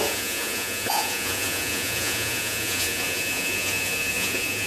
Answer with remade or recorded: remade